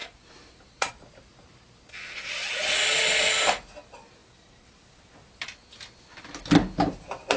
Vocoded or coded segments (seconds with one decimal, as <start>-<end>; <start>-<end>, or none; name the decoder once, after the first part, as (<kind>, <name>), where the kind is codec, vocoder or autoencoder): 0.0-1.8 (vocoder, BigVGAN v2)